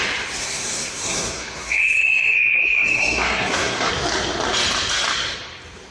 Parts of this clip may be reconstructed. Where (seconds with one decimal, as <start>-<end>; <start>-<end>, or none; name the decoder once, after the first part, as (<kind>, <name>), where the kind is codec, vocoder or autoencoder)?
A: 0.4-3.9 (codec, SNAC)